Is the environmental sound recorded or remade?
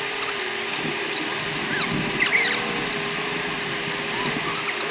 recorded